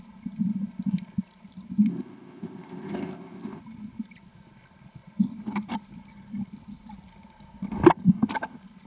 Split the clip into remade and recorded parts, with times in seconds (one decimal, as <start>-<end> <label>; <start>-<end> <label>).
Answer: 0.0-1.9 recorded; 1.9-3.6 remade; 3.6-8.9 recorded